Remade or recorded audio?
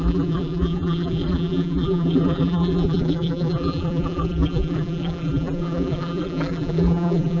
remade